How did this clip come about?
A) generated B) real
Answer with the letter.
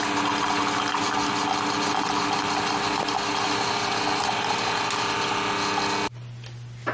B